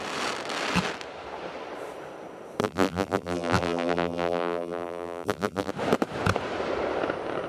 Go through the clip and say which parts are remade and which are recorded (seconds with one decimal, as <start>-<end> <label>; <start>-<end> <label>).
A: 0.0-2.6 recorded; 2.6-5.7 remade; 5.7-7.5 recorded